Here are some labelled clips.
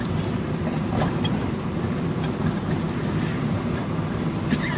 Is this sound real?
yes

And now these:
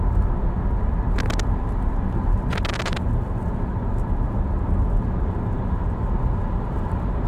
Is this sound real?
yes